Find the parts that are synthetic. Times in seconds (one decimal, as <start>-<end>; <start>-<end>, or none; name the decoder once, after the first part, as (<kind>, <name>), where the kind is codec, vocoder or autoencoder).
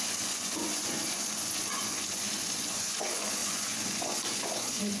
0.0-5.0 (vocoder, Vocos)